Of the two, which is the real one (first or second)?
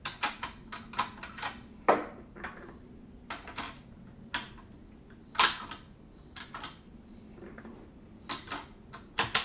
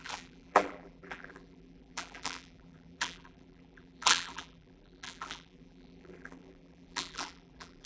first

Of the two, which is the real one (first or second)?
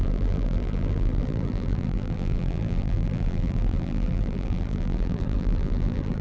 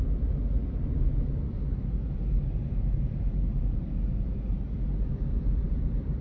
second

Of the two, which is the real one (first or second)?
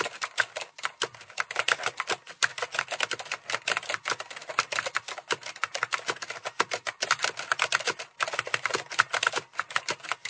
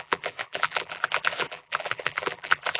first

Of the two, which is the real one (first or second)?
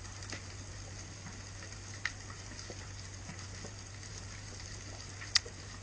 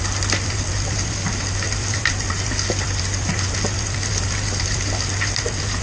first